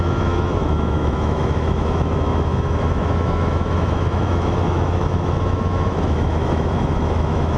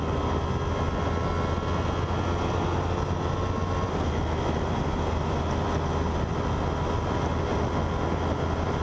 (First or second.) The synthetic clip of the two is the first